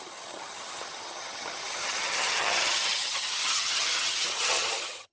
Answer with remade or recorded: remade